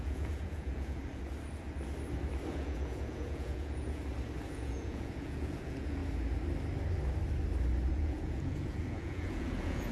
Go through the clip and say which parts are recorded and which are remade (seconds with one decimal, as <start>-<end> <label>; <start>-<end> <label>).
0.0-1.0 remade; 1.0-2.5 recorded; 2.5-4.0 remade; 4.0-4.5 recorded; 4.5-6.0 remade; 6.0-7.9 recorded; 7.9-9.9 remade